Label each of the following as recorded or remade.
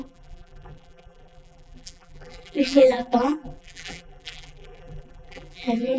remade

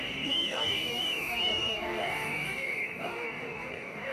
remade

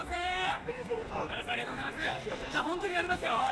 remade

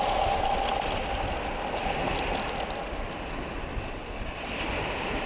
recorded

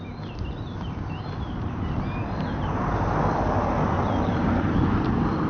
recorded